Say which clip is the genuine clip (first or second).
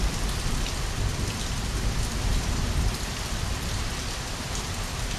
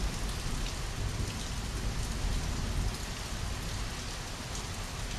second